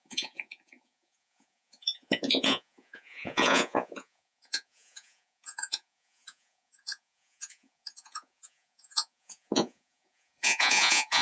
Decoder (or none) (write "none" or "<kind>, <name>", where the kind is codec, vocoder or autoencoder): vocoder, Vocos